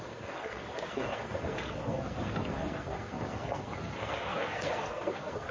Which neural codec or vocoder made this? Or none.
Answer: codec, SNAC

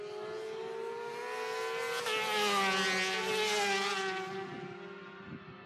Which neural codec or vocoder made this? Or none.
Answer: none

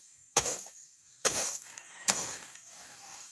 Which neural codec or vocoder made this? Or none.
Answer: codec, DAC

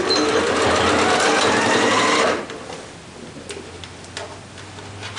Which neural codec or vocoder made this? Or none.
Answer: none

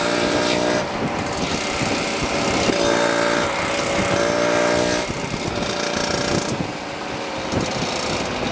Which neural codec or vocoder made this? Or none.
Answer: none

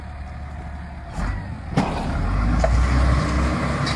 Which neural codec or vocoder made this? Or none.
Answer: none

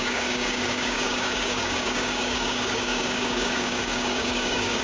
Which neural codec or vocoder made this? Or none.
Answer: codec, DAC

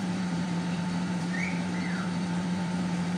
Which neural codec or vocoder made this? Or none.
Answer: vocoder, BigVGAN v2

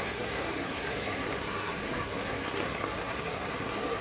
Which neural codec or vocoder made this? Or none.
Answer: codec, SNAC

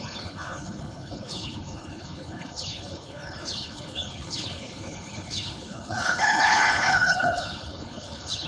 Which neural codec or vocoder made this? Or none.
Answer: codec, HILCodec